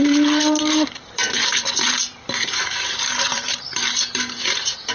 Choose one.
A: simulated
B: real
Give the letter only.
A